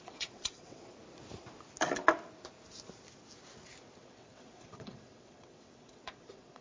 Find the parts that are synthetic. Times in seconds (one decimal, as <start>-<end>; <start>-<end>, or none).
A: 0.0-0.8; 4.0-6.6